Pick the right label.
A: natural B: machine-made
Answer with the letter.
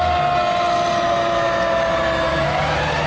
A